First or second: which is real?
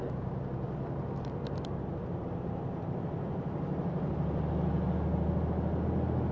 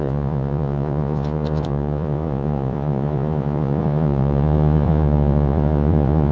first